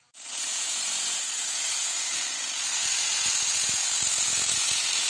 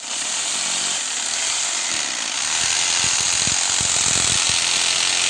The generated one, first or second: first